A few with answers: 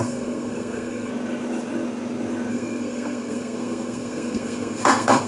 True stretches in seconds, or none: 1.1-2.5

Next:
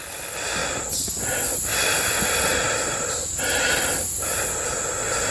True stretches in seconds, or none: 0.0-5.3

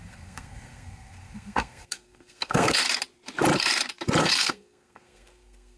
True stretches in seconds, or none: 2.8-4.2

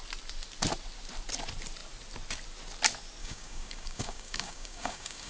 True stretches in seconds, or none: 0.0-3.2

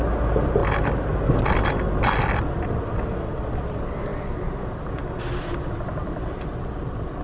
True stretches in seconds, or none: 0.0-7.2

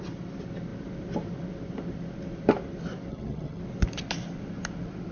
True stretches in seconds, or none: 0.0-3.1; 3.6-5.1

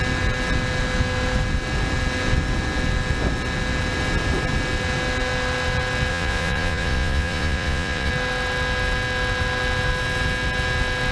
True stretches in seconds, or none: 0.0-6.1; 8.1-11.1